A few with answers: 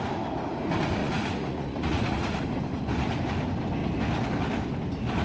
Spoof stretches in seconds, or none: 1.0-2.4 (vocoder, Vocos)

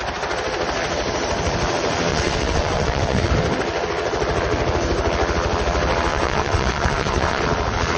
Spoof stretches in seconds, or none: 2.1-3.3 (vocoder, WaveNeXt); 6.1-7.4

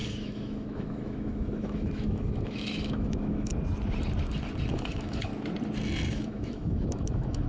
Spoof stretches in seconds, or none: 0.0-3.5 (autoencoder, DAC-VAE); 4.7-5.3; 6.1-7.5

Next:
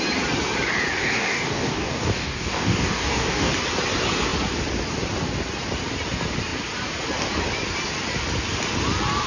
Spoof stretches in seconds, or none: 1.0-3.5 (codec, DAC)

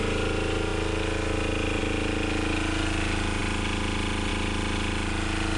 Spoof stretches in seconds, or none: none

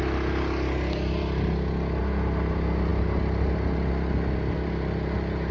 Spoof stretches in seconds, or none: none

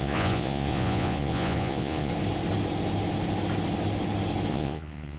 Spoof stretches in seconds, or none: 0.0-2.1 (vocoder, Vocos); 4.5-5.2

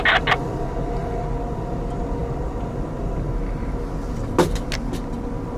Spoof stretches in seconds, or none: none